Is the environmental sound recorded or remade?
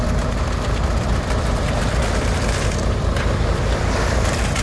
recorded